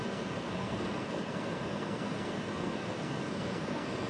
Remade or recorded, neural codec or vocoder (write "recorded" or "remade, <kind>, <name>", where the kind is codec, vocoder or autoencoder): remade, codec, SNAC